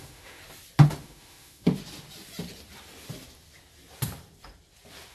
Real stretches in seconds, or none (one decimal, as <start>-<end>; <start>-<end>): 0.4-1.0; 1.7-5.1